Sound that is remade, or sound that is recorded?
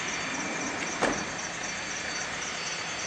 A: recorded